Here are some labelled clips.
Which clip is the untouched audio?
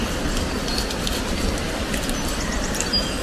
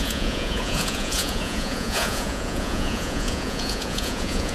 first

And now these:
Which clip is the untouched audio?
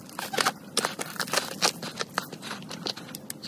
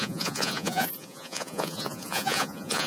first